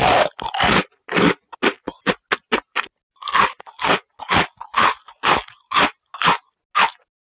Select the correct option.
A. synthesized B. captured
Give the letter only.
B